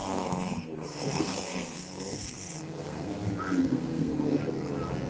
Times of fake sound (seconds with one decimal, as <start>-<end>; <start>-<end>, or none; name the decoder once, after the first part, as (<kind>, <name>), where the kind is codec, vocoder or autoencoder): 0.0-3.1 (codec, SNAC); 3.6-4.4